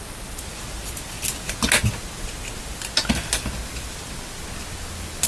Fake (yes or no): no